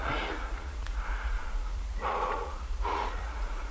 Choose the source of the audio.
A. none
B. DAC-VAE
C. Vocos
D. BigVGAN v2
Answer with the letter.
C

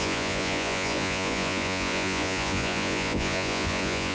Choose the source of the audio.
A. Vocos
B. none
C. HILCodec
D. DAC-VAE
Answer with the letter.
A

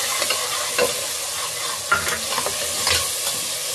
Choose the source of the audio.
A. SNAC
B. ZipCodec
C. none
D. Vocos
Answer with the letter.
C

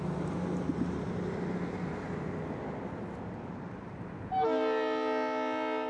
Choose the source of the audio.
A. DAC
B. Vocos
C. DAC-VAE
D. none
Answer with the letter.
D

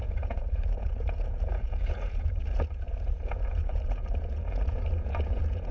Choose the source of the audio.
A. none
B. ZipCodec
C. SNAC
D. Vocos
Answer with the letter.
D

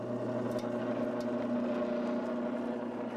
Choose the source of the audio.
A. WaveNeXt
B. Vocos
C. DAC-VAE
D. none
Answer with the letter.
D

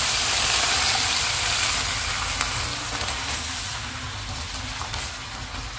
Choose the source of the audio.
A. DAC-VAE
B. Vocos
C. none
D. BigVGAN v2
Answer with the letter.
C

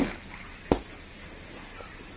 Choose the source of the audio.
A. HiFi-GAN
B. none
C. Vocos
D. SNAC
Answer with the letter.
B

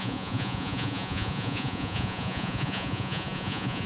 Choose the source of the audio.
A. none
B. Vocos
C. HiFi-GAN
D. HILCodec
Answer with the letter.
B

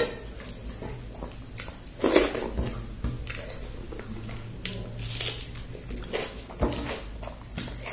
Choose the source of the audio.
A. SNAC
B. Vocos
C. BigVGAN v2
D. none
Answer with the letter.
D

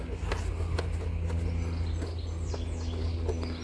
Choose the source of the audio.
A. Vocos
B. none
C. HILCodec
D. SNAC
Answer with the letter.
B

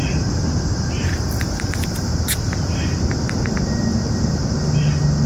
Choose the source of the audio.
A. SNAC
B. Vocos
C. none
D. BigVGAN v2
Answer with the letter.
C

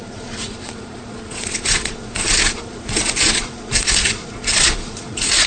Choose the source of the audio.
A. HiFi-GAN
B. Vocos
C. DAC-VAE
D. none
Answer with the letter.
B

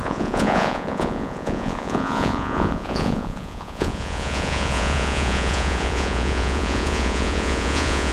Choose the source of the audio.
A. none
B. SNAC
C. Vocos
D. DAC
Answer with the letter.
C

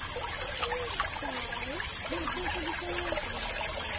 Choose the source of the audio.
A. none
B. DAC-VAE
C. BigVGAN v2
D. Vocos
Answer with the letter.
A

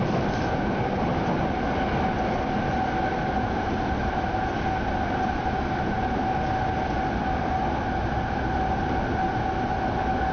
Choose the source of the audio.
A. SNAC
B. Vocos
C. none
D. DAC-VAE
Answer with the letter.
C